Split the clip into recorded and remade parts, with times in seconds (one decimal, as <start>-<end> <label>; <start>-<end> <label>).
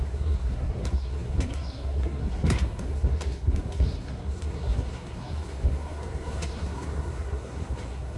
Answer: 0.0-8.2 remade